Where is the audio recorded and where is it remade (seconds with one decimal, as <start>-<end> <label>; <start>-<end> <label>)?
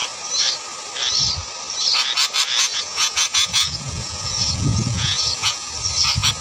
0.0-2.7 recorded; 2.7-5.7 remade; 5.7-6.4 recorded